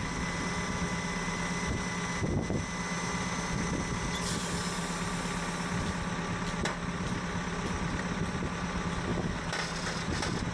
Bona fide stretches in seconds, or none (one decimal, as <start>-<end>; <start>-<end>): 0.0-10.5